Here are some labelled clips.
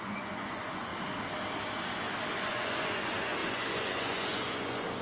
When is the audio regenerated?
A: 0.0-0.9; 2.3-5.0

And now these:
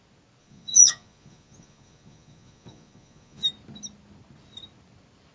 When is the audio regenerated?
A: 0.4-3.4

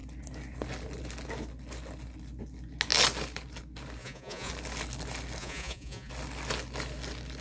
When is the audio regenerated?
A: 4.0-4.5; 5.4-6.1